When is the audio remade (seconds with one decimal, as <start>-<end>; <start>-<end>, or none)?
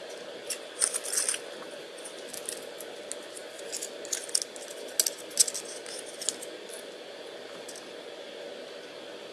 none